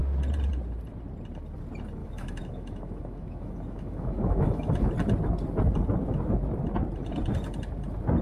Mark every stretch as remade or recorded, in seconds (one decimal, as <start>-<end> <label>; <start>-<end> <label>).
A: 0.0-2.0 recorded; 2.0-4.9 remade; 4.9-8.2 recorded